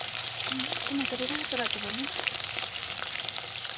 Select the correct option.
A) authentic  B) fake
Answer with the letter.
B